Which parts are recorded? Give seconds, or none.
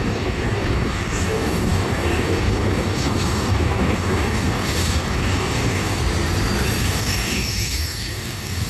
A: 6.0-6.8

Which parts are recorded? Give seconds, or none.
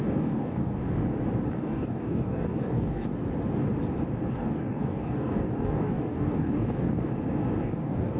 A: 1.0-1.5; 3.1-4.3; 7.1-7.6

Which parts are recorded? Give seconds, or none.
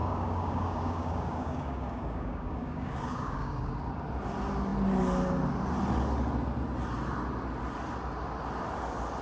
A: 3.7-9.2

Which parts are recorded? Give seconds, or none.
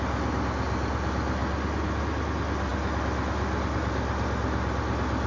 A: 0.0-5.3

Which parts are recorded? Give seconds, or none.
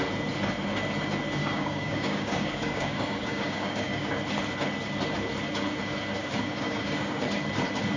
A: 0.0-1.4; 4.1-6.2; 7.3-8.0